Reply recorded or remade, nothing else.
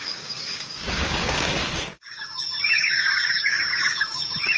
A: remade